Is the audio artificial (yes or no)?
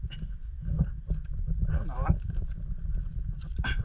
no